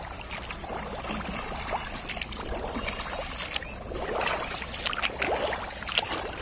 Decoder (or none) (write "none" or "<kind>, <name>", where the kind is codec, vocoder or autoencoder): none